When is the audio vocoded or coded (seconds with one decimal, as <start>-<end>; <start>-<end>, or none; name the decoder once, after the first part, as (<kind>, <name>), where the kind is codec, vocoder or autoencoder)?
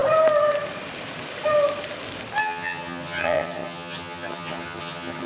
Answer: 2.4-5.3 (vocoder, HiFi-GAN)